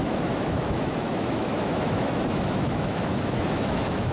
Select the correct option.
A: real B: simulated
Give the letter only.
B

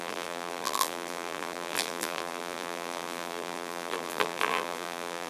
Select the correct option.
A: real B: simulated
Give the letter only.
B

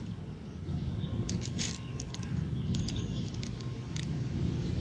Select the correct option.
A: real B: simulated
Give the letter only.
B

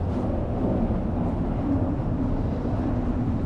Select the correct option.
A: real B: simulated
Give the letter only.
A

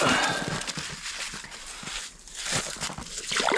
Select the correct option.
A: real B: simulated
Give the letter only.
A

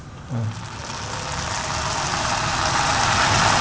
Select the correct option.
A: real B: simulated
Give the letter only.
A